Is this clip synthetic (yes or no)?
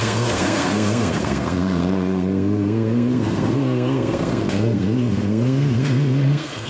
yes